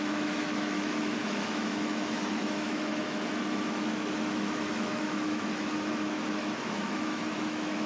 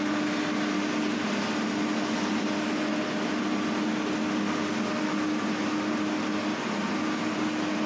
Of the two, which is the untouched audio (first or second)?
second